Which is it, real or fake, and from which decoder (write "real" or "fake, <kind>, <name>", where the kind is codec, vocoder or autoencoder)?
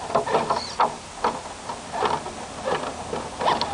real